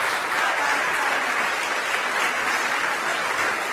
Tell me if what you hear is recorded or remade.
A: recorded